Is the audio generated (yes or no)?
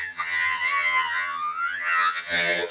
yes